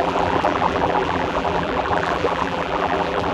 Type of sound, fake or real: fake